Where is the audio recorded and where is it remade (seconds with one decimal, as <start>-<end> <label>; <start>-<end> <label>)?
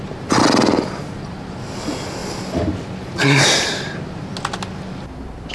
0.0-5.5 recorded